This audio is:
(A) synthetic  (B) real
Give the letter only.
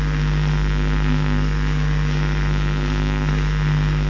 A